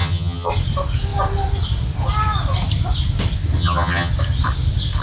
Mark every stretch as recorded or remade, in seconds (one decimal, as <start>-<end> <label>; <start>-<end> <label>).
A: 0.0-0.5 remade; 0.5-3.6 recorded; 3.6-4.1 remade; 4.1-5.0 recorded